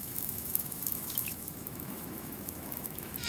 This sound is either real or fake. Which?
fake